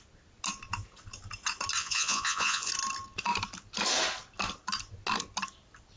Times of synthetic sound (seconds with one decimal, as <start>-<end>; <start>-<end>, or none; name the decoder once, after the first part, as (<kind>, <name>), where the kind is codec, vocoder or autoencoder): 1.8-2.7 (vocoder, Vocos)